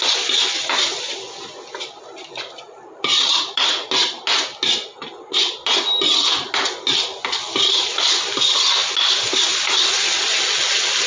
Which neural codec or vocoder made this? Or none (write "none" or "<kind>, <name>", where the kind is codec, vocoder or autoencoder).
none